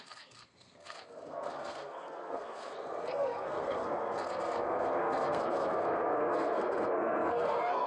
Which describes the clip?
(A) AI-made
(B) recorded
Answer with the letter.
A